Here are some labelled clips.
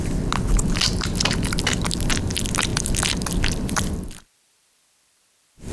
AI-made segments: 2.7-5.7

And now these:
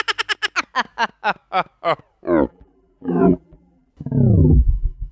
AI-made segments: 2.5-3.9; 4.4-5.1

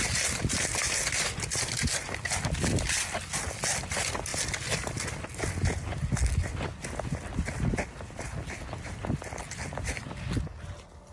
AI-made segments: none

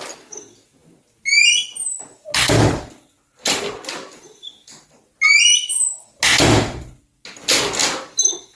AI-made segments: 7.8-8.5